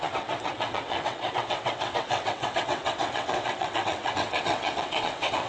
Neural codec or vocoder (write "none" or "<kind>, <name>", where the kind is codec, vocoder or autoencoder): vocoder, WaveNeXt